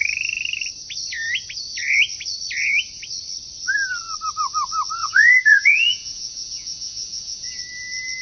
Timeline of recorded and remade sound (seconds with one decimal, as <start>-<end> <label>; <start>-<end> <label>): 0.0-5.0 recorded; 5.0-7.6 remade; 7.6-8.2 recorded